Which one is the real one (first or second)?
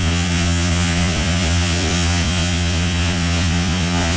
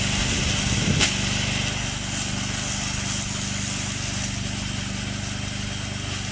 second